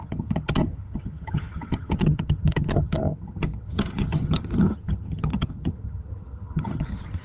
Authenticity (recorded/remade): remade